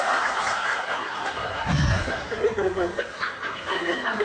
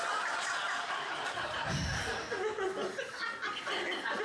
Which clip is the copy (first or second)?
first